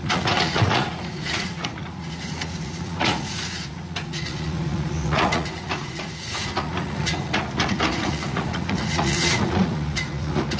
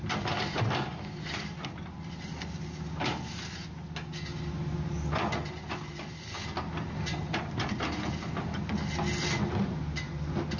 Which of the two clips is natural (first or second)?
second